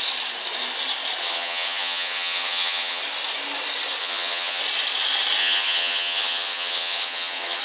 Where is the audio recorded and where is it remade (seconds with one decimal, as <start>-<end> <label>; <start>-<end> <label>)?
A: 0.0-1.2 recorded; 1.2-3.0 remade; 3.0-4.0 recorded; 4.0-4.6 remade; 4.6-5.4 recorded; 5.4-7.6 remade